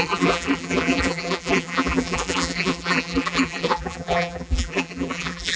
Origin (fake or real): fake